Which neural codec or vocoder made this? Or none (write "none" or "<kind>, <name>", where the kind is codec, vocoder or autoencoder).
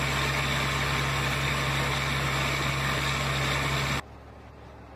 none